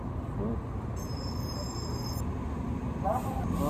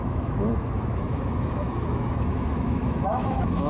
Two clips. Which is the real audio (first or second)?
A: first